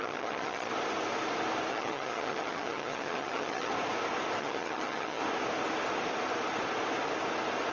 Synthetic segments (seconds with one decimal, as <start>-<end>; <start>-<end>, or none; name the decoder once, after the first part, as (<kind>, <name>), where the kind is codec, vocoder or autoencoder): 0.0-0.7 (vocoder, HiFi-GAN); 1.7-3.7; 4.4-5.2